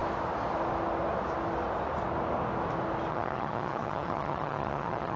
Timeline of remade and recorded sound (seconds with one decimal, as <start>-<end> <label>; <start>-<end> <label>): 0.0-3.1 recorded; 3.1-5.2 remade